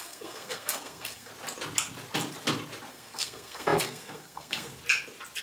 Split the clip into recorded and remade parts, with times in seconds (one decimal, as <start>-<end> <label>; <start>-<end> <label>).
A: 0.0-1.3 remade; 1.3-2.9 recorded; 2.9-4.7 remade; 4.7-5.4 recorded